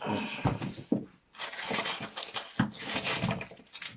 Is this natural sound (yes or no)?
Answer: yes